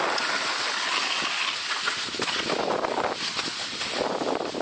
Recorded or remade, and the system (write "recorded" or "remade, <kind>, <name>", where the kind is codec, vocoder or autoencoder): recorded